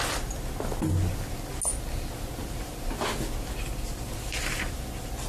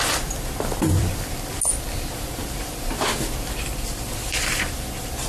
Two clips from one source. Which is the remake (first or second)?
second